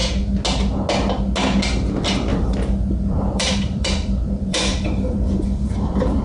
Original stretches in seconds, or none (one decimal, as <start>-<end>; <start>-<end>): 0.0-2.3